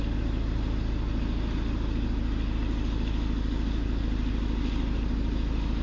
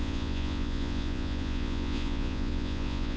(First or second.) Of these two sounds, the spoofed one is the second